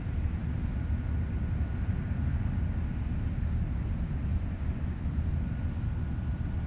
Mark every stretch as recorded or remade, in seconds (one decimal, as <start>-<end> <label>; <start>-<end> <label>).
0.0-4.3 recorded; 4.3-5.3 remade; 5.3-6.7 recorded